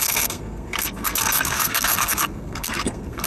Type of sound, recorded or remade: remade